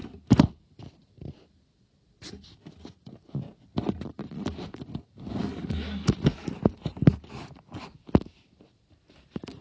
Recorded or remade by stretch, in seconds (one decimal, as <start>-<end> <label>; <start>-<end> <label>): 0.0-4.1 remade; 4.1-7.2 recorded; 7.2-9.6 remade